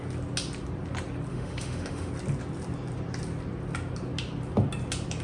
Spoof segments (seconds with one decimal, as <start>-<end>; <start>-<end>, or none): 1.3-2.1